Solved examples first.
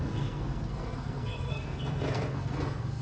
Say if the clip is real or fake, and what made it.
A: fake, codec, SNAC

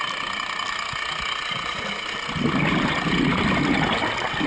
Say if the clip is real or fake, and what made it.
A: real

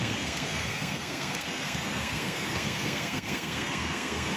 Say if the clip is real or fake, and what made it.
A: fake, codec, SNAC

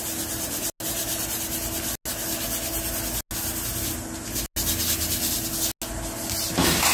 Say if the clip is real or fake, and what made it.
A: real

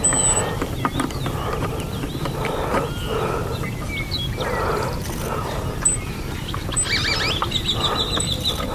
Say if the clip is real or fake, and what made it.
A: real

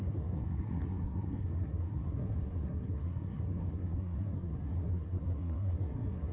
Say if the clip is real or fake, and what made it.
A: fake, codec, SNAC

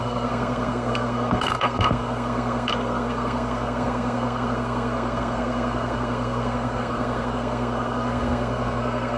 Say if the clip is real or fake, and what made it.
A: fake, codec, SNAC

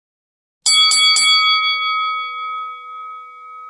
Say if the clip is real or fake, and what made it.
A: real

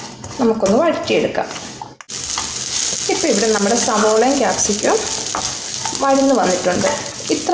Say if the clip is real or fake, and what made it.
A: real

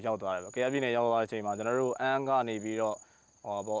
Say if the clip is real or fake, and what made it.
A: real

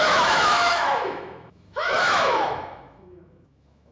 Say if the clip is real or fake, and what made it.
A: fake, autoencoder, DAC-VAE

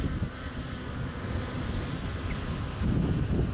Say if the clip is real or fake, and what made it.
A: real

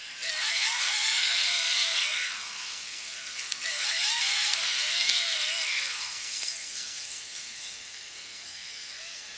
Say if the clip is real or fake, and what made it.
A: fake, codec, SNAC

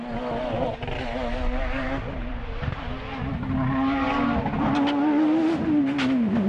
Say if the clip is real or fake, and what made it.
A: real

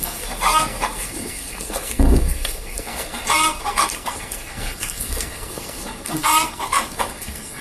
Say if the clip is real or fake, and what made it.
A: fake, codec, SNAC